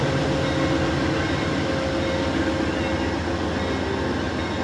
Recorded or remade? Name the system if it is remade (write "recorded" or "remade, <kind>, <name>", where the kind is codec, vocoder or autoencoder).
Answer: recorded